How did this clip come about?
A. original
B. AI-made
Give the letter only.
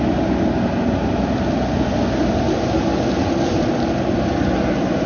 A